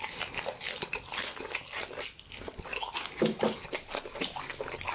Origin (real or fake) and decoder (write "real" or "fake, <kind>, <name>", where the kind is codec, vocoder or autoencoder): real